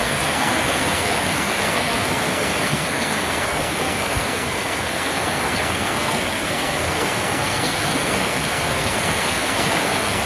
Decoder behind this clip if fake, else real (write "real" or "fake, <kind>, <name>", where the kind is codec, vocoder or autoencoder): fake, codec, SNAC